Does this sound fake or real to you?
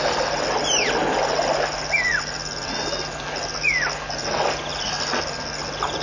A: real